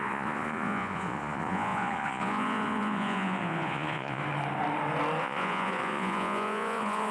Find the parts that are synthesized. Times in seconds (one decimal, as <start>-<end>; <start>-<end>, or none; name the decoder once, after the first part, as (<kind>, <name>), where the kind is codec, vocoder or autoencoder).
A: 0.0-4.2 (vocoder, Vocos); 5.2-7.1